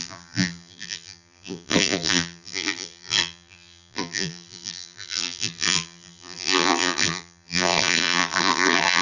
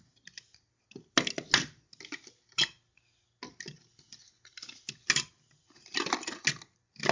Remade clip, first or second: first